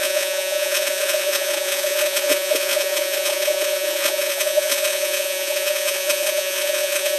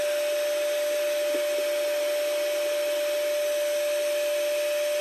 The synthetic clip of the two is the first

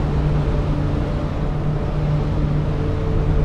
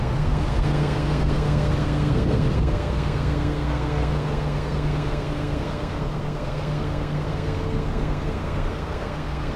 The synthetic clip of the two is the second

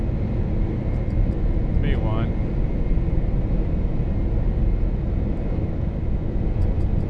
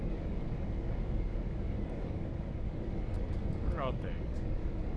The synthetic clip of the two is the second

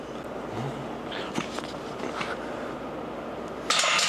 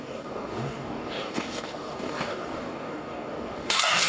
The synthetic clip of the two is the second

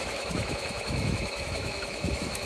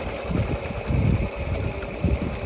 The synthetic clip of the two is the first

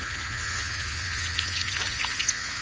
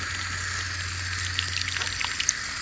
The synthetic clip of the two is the first